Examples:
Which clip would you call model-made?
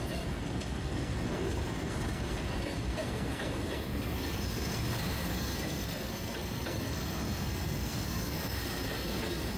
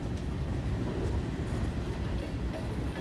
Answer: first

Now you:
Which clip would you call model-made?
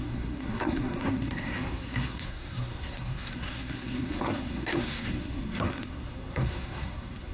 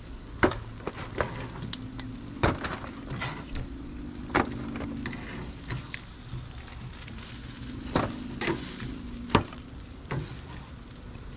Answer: first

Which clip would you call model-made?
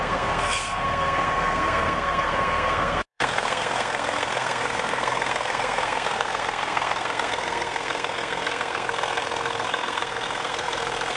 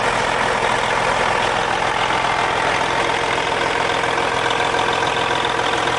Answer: first